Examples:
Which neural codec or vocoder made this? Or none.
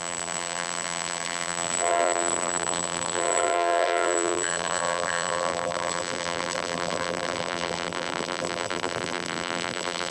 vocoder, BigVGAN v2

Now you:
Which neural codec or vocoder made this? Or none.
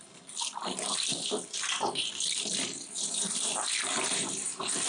none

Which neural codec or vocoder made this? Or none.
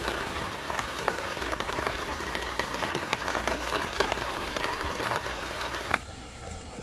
codec, SNAC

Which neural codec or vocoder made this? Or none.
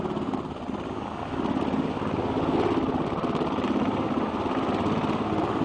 none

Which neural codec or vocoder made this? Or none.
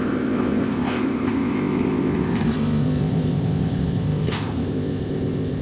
codec, ZipCodec